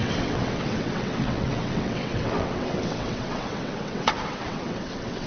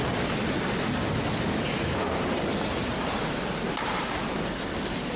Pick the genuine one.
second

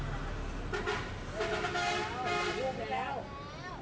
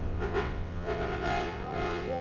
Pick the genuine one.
first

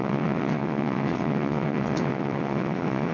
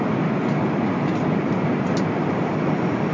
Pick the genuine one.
second